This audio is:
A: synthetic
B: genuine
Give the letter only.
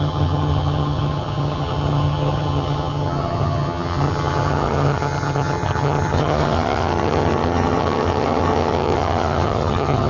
A